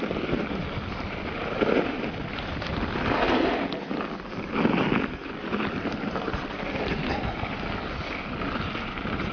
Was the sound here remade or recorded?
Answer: recorded